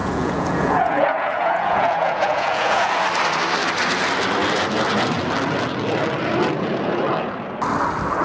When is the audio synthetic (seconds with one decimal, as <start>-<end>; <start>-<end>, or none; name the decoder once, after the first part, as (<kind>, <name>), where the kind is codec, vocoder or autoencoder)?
0.0-2.9 (vocoder, Vocos)